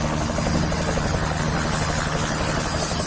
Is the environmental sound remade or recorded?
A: recorded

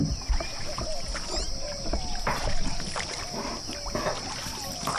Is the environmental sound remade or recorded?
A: recorded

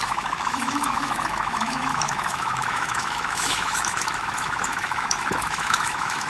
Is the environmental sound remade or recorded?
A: remade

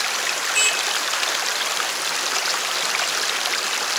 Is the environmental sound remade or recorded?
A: recorded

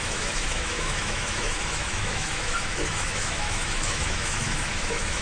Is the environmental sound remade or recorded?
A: remade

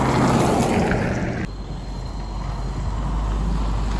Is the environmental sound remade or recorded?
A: recorded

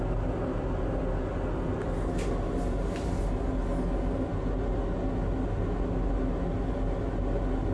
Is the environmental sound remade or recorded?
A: recorded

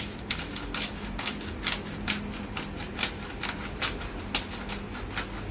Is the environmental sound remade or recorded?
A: recorded